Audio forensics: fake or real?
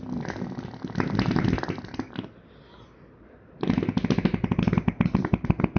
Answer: real